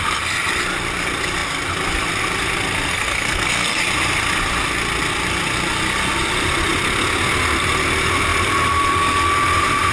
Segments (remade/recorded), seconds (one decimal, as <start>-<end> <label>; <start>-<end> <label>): 0.0-2.9 recorded; 2.9-3.8 remade; 3.8-9.9 recorded